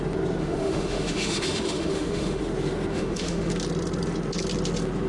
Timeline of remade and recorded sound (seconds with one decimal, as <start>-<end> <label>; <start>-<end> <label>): 0.0-0.4 recorded; 0.4-2.4 remade; 2.4-2.9 recorded; 2.9-3.5 remade; 3.5-5.1 recorded